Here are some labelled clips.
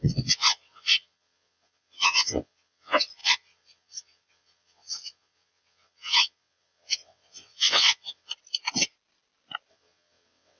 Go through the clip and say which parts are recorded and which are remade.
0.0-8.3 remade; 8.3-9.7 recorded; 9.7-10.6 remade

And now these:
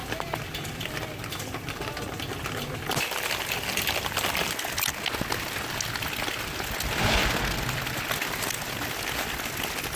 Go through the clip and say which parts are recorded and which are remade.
0.0-10.0 recorded

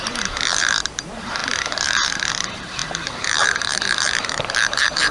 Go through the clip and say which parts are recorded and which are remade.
0.0-5.1 remade

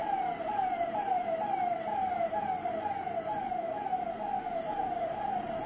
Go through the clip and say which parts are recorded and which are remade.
0.0-3.4 remade; 3.4-4.6 recorded; 4.6-5.7 remade

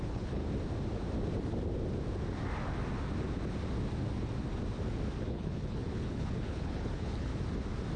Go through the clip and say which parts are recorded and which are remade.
0.0-0.4 remade; 0.4-5.2 recorded; 5.2-7.3 remade; 7.3-8.0 recorded

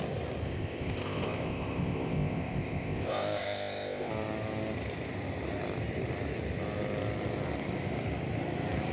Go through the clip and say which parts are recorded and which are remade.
0.0-0.4 recorded; 0.4-4.1 remade; 4.1-8.9 recorded